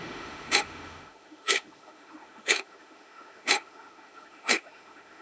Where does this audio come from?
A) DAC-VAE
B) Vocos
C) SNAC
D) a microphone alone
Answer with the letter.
A